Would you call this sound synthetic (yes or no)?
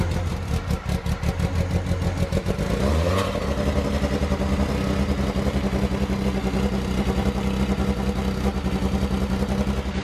no